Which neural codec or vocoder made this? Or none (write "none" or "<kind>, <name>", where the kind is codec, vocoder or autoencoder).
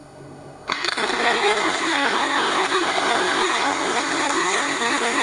codec, SNAC